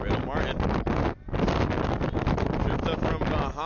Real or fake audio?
real